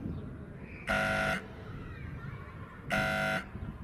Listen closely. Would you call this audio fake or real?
real